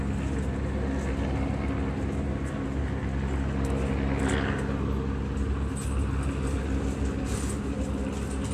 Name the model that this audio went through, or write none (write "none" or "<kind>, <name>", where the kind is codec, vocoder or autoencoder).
none